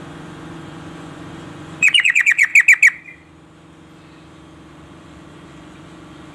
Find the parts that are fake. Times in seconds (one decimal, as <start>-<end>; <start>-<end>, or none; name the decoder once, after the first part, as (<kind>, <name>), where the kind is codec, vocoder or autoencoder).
0.0-2.5 (vocoder, Vocos); 4.7-6.3